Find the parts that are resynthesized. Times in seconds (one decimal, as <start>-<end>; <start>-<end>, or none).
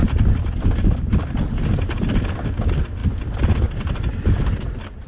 none